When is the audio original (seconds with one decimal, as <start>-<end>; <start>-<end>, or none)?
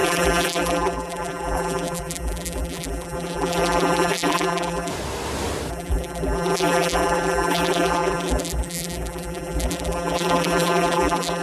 4.9-5.7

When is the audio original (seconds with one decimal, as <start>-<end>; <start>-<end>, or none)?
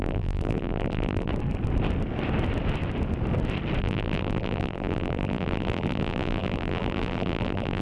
1.3-3.8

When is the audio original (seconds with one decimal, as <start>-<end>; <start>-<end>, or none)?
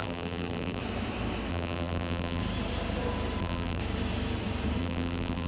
0.8-1.5; 2.4-3.4; 3.8-4.8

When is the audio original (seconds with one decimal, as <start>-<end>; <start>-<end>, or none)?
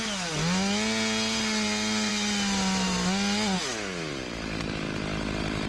0.0-5.7